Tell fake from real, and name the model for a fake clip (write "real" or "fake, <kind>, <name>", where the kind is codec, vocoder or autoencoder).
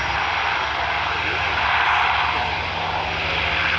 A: real